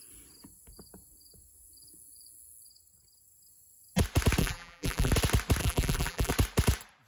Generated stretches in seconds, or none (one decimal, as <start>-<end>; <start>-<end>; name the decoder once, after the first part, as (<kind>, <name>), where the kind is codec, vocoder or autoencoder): 4.4-5.1 (vocoder, BigVGAN v2); 5.6-6.3